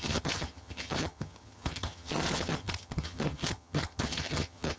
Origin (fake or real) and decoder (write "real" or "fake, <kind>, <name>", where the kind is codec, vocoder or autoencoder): fake, vocoder, HiFi-GAN